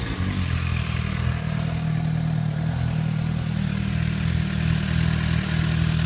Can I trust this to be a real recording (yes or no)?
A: yes